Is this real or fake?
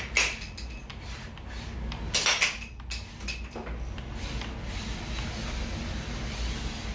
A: real